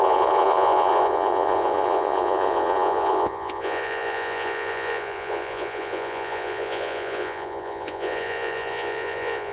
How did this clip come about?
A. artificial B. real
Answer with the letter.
A